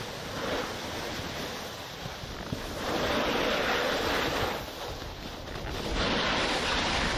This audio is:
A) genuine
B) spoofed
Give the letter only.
A